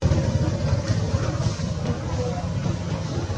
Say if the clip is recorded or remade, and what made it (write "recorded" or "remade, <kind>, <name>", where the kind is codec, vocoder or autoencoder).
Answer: recorded